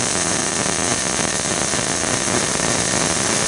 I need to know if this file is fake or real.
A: fake